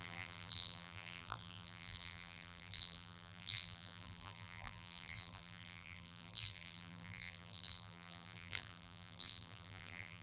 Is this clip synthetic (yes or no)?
yes